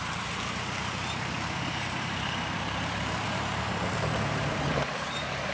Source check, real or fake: fake